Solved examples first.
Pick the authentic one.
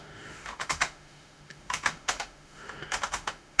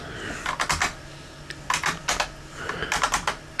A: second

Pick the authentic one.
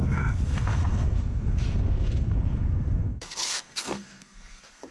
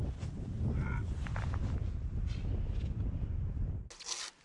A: second